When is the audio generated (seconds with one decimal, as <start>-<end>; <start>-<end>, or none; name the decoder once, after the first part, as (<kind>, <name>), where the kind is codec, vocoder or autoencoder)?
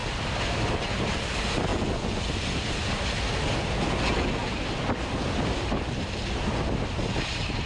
1.7-2.2 (vocoder, Vocos)